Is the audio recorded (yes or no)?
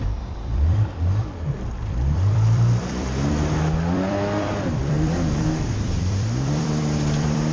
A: no